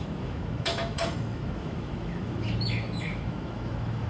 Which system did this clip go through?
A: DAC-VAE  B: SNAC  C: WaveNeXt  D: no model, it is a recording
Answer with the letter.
A